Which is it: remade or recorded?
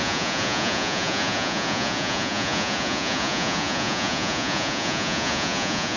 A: remade